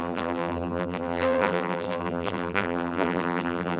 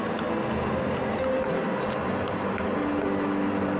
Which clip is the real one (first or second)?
second